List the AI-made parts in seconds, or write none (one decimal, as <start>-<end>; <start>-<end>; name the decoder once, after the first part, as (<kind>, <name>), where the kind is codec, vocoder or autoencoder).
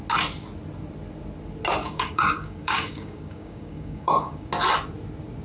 1.8-4.5 (codec, DAC)